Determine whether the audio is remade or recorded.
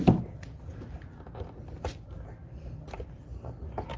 recorded